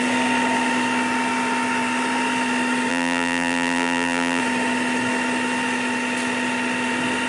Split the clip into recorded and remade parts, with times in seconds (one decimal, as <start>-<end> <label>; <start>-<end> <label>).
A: 0.0-2.9 recorded; 2.9-4.4 remade; 4.4-7.3 recorded